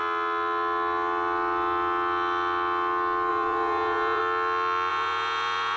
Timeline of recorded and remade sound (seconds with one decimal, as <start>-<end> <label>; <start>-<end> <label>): 0.0-3.3 recorded; 3.3-4.2 remade; 4.2-4.9 recorded; 4.9-5.8 remade